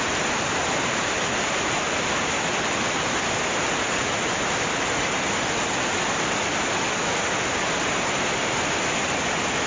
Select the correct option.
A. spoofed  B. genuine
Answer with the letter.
B